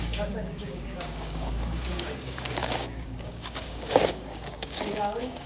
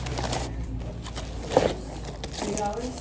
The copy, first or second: first